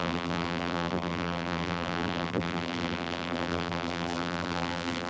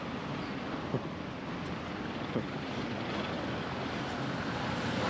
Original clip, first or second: second